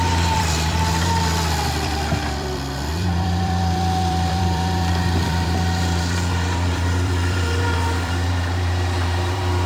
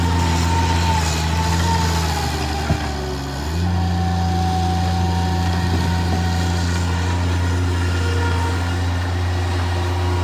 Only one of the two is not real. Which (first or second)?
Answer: first